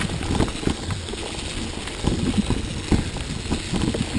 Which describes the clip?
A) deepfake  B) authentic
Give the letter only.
B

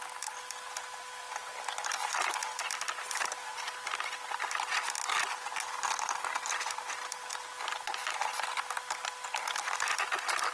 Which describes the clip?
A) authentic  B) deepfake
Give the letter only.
A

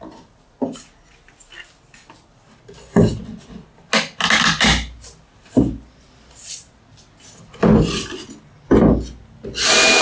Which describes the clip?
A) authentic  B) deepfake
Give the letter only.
A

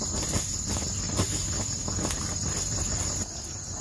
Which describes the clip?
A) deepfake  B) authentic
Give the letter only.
B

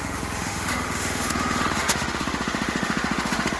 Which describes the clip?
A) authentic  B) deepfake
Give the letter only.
B